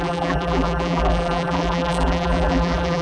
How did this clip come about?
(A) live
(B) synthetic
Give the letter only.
B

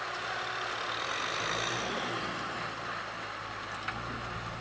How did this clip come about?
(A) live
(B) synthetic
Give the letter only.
A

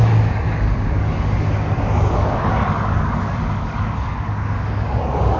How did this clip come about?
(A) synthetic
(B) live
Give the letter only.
A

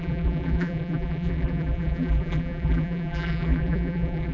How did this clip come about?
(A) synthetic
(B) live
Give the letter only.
A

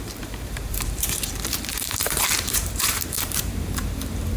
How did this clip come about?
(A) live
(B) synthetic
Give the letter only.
B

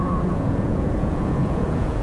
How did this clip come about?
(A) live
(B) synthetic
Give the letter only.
B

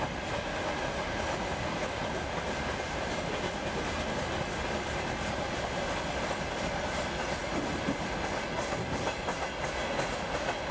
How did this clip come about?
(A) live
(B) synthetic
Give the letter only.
A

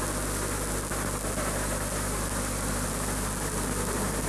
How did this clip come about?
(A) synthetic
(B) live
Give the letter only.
B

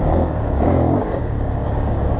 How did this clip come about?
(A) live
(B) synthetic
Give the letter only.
B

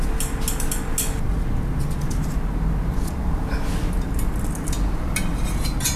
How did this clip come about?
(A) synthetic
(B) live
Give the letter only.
B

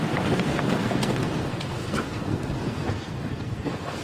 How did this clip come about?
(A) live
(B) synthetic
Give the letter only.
B